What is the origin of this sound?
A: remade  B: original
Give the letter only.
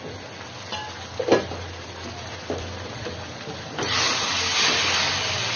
B